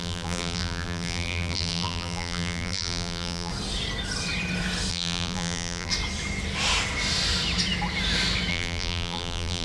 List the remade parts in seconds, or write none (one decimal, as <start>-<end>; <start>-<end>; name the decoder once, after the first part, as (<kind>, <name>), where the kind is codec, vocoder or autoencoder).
0.0-3.5 (vocoder, BigVGAN v2); 4.9-5.9; 8.5-9.6